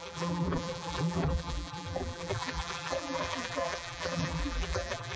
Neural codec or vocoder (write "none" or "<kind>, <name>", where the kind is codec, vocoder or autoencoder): vocoder, BigVGAN v2